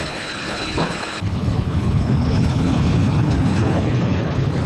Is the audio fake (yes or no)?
yes